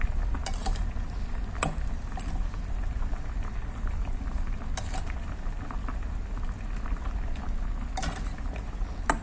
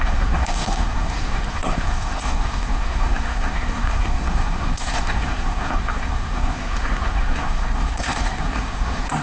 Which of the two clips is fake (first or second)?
second